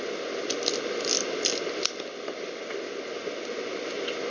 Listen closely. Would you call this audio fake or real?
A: real